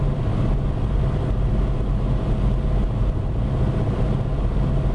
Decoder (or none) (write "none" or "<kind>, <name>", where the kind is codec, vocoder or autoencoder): none